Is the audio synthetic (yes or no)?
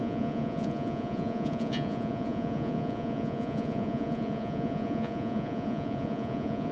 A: yes